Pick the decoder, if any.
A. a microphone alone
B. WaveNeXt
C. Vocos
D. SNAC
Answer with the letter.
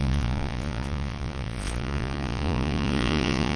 C